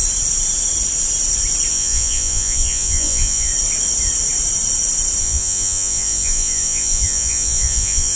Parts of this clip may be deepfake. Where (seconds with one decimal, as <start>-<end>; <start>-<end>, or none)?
1.7-3.5; 5.2-8.2